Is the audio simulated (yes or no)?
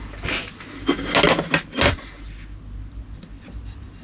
no